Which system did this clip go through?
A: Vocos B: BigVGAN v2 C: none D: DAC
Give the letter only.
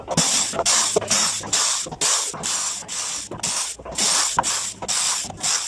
C